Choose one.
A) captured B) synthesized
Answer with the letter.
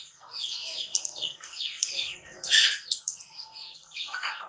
B